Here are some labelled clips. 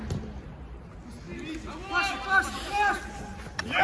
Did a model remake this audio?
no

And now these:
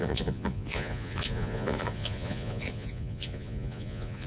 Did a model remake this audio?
yes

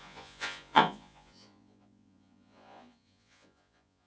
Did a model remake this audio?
yes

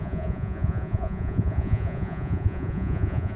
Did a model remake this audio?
yes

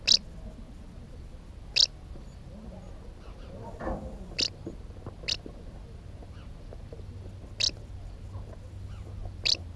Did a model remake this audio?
no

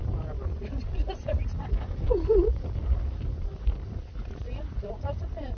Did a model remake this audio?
no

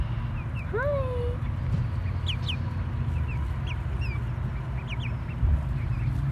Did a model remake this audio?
no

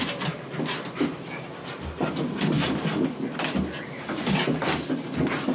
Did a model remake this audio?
no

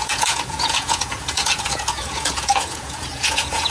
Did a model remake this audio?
yes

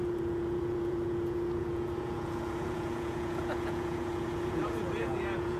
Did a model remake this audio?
yes